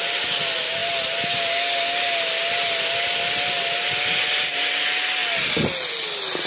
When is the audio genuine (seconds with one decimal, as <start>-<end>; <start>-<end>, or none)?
0.0-6.5